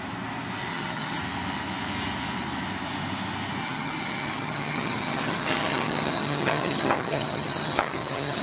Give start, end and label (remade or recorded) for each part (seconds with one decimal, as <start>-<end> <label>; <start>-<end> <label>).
0.0-0.7 recorded; 0.7-1.2 remade; 1.2-3.6 recorded; 3.6-8.4 remade